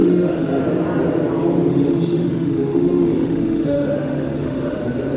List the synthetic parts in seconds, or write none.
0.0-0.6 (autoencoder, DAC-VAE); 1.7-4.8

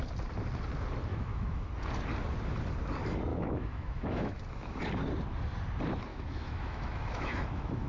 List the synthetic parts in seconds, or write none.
1.1-1.7 (autoencoder, DAC-VAE); 3.3-4.8; 6.1-7.9

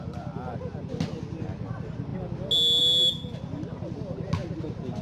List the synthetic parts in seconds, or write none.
none

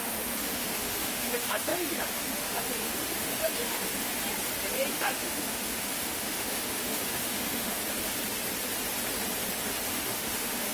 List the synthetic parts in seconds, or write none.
0.0-4.1 (autoencoder, DAC-VAE); 4.9-7.8; 9.9-10.7